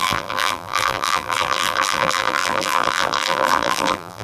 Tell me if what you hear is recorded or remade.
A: remade